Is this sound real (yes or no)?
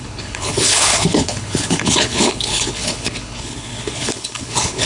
no